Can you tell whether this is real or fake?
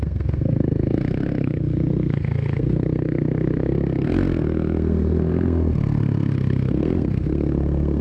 fake